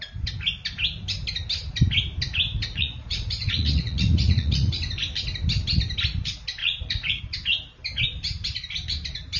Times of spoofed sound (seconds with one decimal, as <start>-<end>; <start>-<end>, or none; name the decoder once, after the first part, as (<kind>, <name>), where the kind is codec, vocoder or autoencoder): 2.6-4.8 (vocoder, Vocos); 6.6-7.2